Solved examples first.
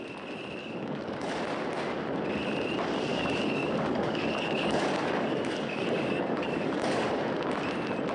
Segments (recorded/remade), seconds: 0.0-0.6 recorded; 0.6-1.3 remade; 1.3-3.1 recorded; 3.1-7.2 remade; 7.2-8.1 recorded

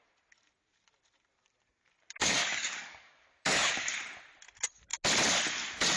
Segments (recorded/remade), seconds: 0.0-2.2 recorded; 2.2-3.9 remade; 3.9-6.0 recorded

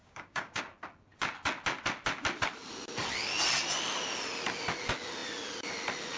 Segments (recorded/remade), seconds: 0.0-0.6 remade; 0.6-6.2 recorded

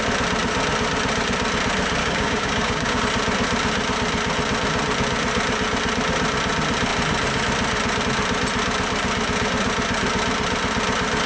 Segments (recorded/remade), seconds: 0.0-2.0 recorded; 2.0-3.0 remade; 3.0-11.3 recorded

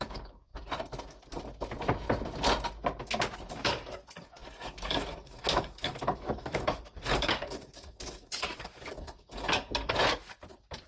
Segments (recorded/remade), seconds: 0.0-0.5 remade; 0.5-3.5 recorded; 3.5-10.0 remade; 10.0-10.9 recorded